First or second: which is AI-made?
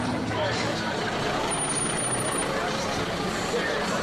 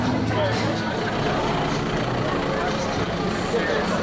first